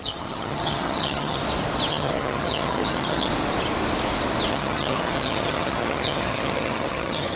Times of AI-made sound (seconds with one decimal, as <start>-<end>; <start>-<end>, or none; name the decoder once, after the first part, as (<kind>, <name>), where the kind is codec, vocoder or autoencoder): 0.0-1.4 (vocoder, HiFi-GAN); 1.9-3.3; 4.5-7.4